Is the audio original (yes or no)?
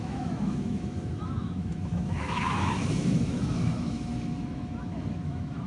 no